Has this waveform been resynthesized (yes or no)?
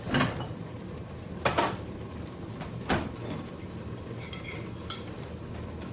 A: no